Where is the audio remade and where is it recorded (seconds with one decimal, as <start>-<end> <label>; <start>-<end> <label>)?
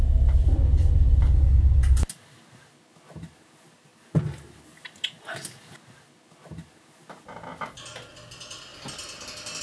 0.0-9.6 recorded